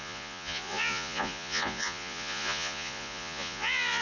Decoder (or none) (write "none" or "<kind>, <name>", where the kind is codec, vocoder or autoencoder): vocoder, Vocos